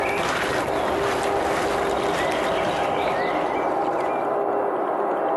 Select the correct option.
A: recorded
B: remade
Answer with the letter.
A